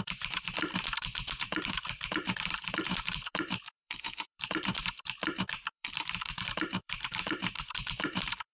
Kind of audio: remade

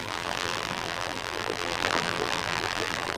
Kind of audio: remade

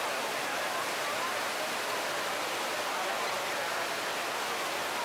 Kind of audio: recorded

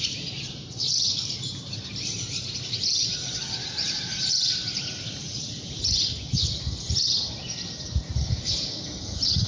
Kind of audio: remade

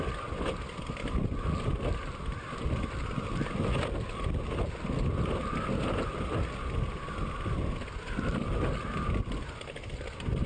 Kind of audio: recorded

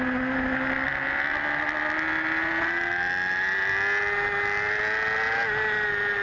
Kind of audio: recorded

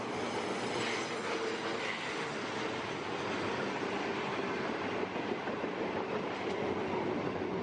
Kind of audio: recorded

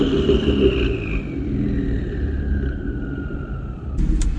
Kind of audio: recorded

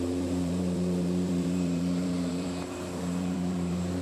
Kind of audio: remade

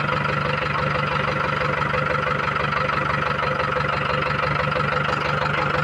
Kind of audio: recorded